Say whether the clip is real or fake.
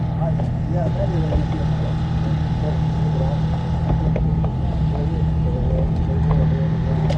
real